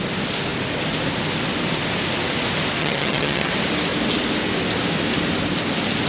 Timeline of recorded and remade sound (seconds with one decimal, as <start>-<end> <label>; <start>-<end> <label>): 0.0-2.8 recorded; 2.8-3.5 remade; 3.5-6.1 recorded